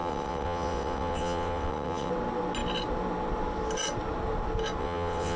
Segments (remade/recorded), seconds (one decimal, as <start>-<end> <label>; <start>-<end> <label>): 0.0-2.1 remade; 2.1-4.8 recorded; 4.8-5.4 remade